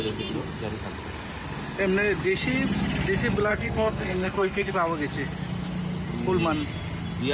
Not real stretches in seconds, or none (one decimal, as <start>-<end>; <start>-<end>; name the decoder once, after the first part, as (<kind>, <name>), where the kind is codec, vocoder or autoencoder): 3.5-4.7 (codec, SNAC)